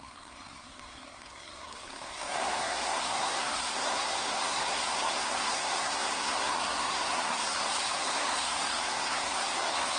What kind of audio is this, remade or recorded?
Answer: remade